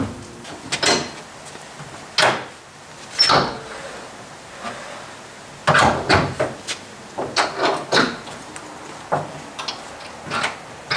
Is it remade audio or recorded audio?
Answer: recorded